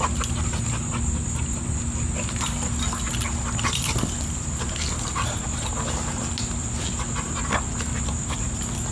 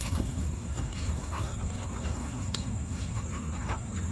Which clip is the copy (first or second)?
second